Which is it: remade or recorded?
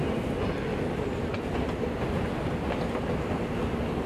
recorded